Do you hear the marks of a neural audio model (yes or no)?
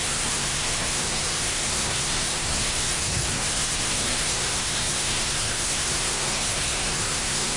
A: yes